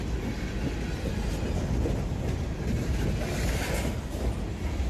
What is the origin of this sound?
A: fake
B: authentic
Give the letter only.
B